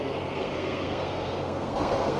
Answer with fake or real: fake